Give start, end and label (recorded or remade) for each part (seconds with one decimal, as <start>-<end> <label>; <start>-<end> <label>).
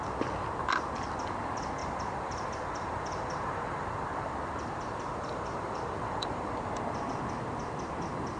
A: 0.0-1.8 recorded; 1.8-6.8 remade; 6.8-8.4 recorded